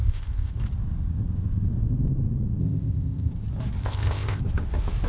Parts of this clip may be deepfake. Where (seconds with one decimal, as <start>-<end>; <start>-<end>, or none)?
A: 0.0-0.6; 2.6-3.3; 3.8-4.4